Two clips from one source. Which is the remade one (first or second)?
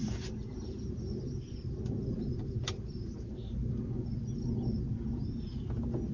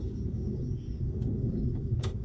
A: second